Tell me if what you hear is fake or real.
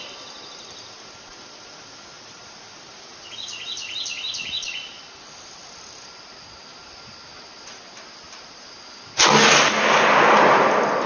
real